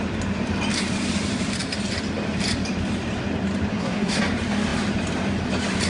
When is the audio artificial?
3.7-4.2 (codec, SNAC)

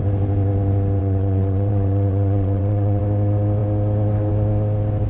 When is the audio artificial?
1.0-3.0 (vocoder, WaveNeXt)

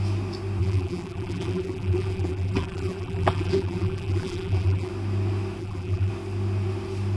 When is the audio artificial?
0.6-4.9 (vocoder, BigVGAN v2); 5.6-6.1